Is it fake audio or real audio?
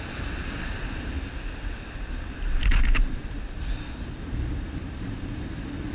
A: real